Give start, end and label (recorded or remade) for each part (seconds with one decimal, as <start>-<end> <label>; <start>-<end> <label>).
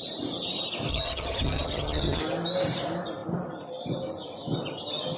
0.0-0.9 recorded; 0.9-2.2 remade; 2.2-5.2 recorded